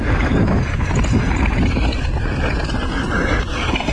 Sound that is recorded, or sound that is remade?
recorded